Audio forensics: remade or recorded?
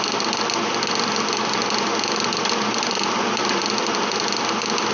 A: recorded